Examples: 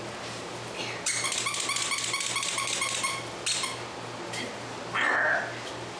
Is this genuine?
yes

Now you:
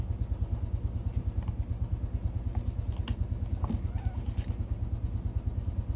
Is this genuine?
yes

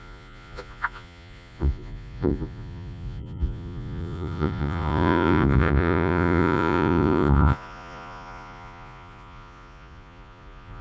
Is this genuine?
no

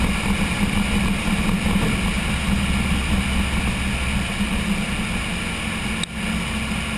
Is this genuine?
yes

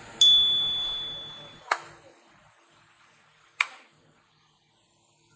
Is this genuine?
yes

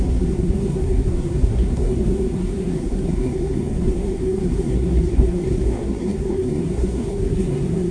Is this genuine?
no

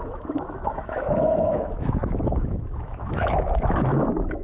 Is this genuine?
no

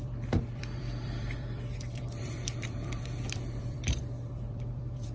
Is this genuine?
no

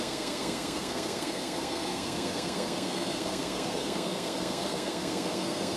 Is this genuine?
no